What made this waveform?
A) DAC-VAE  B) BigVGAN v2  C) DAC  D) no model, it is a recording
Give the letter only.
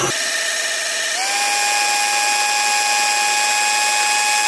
D